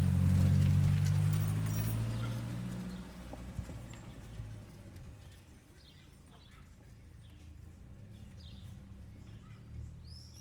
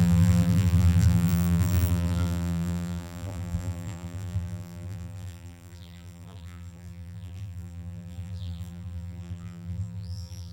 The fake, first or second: second